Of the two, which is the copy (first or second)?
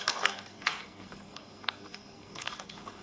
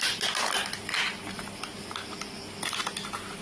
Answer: first